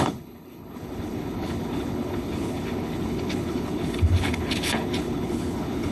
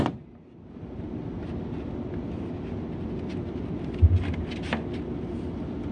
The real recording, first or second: second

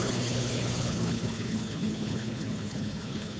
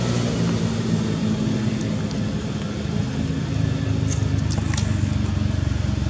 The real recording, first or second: second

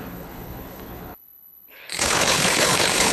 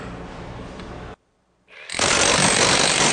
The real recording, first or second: second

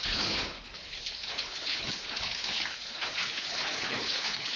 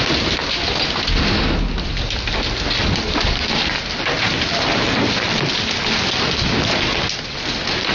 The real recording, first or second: second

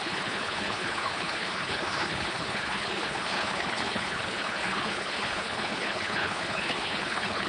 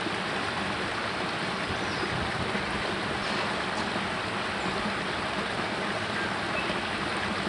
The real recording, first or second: second